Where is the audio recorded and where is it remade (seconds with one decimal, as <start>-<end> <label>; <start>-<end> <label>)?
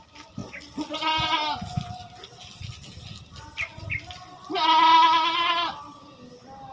0.0-6.7 recorded